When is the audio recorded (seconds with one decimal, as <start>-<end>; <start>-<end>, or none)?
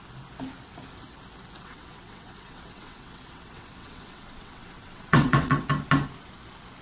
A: 0.0-1.6; 5.7-6.8